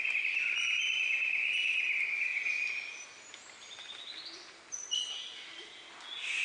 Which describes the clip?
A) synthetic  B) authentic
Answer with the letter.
B